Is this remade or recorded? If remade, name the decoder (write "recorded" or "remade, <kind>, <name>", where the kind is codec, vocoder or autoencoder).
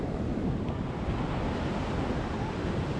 recorded